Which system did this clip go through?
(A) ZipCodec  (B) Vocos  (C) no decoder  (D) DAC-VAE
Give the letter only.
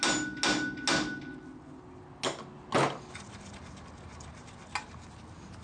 C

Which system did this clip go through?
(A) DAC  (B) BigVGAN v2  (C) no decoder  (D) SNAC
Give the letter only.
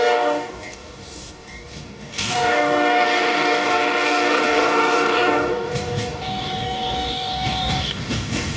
A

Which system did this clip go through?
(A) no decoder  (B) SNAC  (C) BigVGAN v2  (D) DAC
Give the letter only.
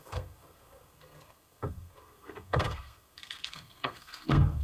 B